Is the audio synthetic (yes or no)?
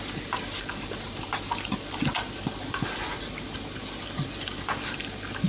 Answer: no